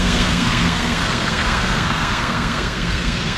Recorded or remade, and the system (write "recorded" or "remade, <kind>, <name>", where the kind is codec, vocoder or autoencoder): remade, codec, SNAC